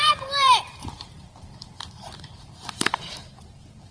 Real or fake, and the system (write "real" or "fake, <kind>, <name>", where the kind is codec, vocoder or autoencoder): fake, vocoder, BigVGAN v2